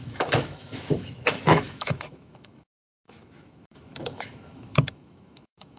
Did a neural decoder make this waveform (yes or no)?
yes